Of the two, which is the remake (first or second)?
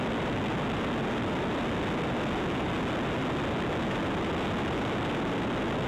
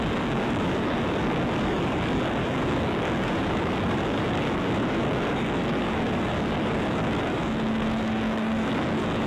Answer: second